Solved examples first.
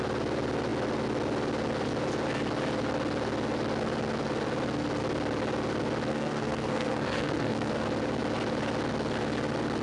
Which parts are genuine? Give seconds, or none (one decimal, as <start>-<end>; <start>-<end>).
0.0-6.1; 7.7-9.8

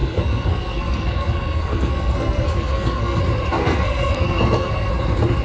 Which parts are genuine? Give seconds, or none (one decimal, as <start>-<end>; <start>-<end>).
3.2-3.6; 4.9-5.4

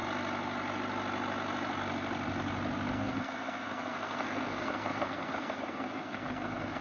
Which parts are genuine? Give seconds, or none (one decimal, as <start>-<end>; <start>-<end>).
0.0-2.9

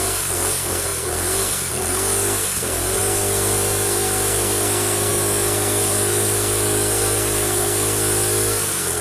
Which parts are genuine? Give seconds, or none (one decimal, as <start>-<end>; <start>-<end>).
none